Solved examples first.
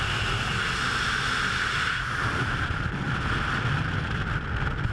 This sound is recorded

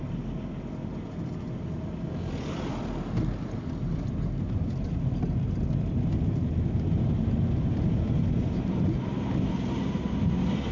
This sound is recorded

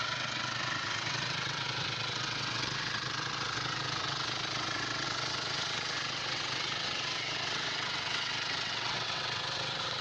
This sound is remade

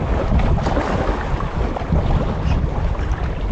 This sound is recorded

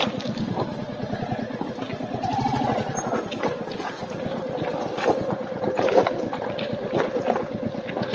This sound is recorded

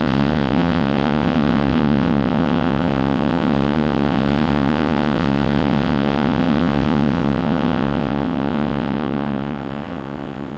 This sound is remade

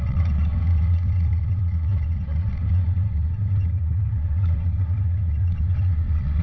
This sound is remade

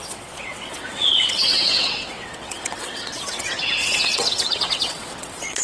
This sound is remade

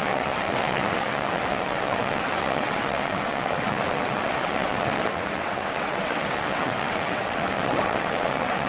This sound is remade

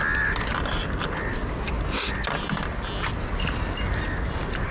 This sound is recorded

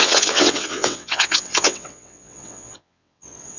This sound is remade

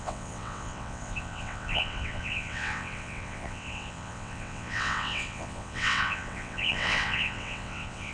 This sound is remade